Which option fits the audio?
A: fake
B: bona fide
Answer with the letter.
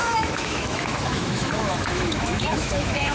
A